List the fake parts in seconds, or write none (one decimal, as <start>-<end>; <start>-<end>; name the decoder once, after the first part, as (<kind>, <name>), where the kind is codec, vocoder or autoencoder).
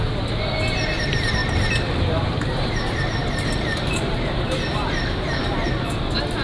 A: 3.2-5.7 (vocoder, BigVGAN v2)